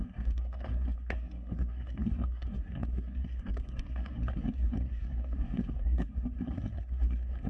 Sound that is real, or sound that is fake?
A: fake